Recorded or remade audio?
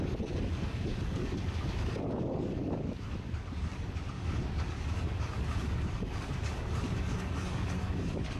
remade